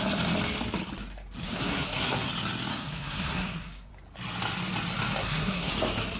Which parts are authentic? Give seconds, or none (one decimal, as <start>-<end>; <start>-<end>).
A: 0.0-1.4; 2.3-2.7; 3.9-5.2; 5.7-6.2